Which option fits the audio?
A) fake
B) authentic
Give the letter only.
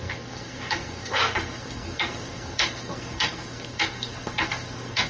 A